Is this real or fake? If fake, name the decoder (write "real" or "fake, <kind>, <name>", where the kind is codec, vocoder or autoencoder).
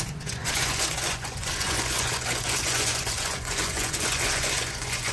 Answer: fake, vocoder, Vocos